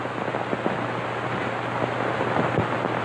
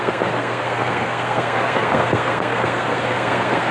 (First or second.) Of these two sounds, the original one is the first